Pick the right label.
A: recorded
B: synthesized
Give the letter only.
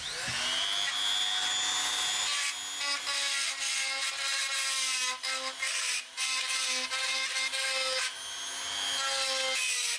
A